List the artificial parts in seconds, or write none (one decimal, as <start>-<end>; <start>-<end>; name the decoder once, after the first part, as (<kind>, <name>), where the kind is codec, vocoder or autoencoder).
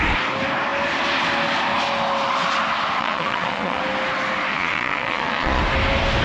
3.0-3.8 (vocoder, Vocos); 4.5-5.6